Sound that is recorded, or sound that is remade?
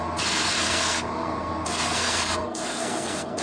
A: remade